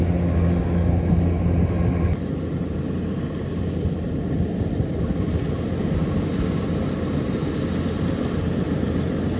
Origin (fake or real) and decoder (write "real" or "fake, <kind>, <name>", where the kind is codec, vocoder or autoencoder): real